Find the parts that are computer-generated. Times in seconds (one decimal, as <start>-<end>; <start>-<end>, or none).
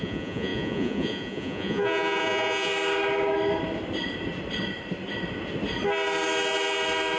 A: 0.0-2.7